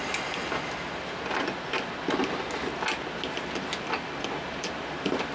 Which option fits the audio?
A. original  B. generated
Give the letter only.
A